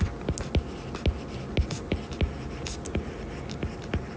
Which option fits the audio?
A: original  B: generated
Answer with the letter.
A